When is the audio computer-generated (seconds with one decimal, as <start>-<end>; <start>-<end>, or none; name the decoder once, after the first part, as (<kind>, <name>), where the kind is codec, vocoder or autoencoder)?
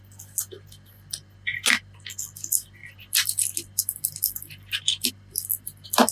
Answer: none